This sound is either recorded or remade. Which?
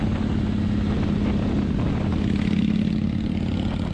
recorded